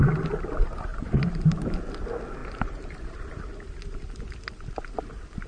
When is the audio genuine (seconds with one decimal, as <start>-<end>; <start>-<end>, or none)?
0.0-0.9; 1.7-2.4; 3.4-5.5